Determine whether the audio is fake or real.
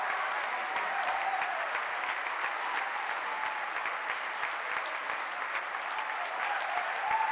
real